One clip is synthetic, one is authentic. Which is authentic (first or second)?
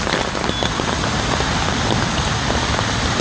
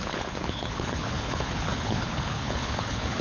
first